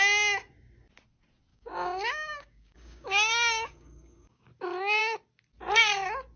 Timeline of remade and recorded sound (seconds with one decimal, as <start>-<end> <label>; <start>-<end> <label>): 0.0-1.5 recorded; 1.5-4.5 remade; 4.5-6.4 recorded